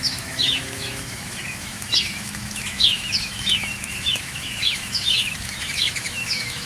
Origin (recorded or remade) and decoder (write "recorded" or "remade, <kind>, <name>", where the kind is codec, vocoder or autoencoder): remade, autoencoder, DAC-VAE